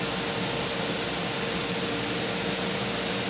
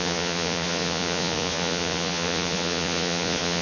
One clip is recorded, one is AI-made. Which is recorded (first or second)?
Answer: first